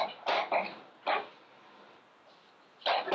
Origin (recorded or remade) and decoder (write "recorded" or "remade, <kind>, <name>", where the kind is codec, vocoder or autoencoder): recorded